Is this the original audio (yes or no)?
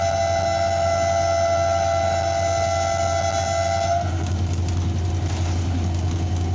yes